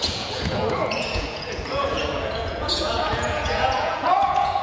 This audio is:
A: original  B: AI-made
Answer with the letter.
B